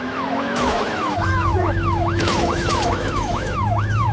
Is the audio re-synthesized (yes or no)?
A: yes